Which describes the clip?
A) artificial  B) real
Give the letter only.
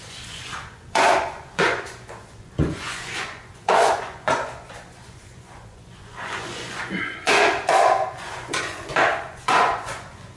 A